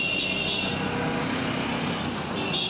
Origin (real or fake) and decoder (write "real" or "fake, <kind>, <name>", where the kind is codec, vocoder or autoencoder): real